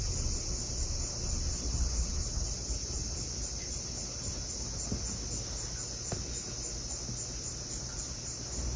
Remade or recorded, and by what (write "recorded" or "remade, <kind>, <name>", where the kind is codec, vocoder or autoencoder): recorded